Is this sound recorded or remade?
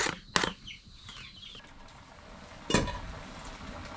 recorded